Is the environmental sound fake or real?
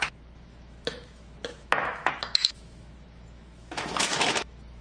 fake